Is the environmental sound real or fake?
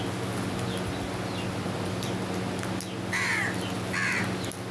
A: real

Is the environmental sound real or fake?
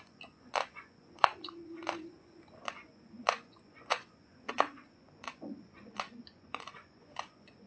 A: fake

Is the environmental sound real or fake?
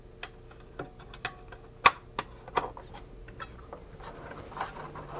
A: real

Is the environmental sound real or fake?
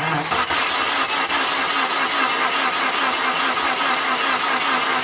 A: real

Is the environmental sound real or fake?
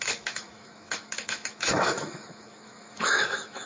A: fake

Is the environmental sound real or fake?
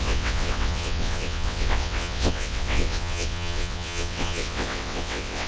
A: fake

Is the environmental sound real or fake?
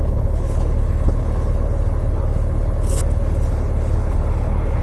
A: fake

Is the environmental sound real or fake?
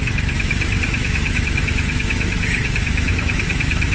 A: fake